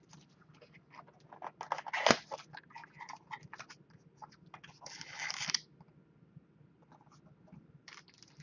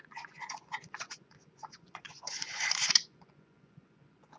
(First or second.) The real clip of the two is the first